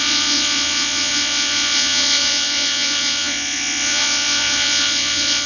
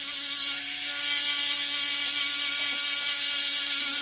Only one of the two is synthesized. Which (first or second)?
first